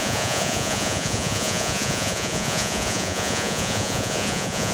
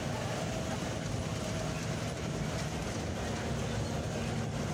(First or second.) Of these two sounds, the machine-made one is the first